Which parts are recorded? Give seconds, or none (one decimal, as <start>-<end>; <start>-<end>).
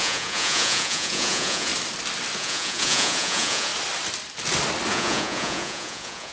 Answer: 1.7-2.4; 3.7-4.9